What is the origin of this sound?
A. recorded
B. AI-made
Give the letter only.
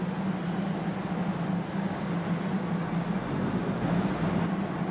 A